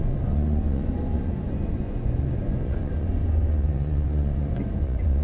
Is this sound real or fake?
fake